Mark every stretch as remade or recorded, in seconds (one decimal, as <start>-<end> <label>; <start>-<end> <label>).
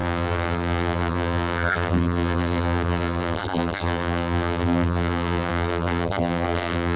0.0-7.0 remade